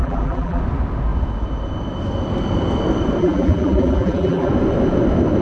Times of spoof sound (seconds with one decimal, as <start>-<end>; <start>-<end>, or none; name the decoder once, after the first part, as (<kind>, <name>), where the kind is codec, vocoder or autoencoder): 0.0-0.6 (vocoder, BigVGAN v2); 3.2-4.5